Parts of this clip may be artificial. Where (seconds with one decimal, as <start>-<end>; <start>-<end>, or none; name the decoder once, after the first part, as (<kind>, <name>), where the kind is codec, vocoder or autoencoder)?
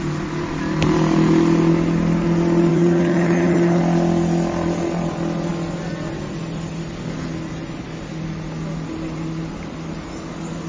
2.7-3.8 (vocoder, HiFi-GAN)